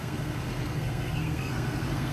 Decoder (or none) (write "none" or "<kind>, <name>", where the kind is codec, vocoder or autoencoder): codec, SNAC